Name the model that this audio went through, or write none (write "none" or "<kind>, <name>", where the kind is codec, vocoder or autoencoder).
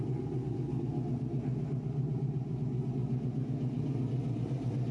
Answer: none